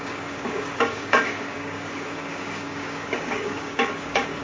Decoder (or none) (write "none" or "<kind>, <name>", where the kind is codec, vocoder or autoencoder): codec, DAC